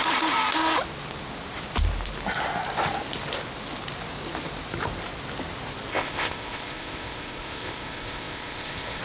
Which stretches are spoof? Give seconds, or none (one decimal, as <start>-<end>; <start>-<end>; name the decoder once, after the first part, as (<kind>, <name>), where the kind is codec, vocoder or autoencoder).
5.9-9.0 (codec, ZipCodec)